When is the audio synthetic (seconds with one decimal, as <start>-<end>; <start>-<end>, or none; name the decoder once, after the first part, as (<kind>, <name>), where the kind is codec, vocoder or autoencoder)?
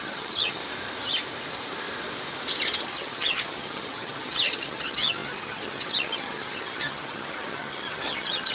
0.0-0.6 (vocoder, HiFi-GAN); 2.8-8.5